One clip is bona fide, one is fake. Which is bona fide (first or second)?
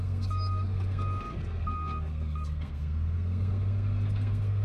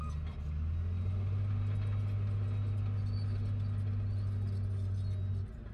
second